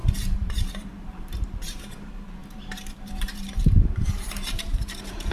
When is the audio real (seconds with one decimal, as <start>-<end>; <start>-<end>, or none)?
none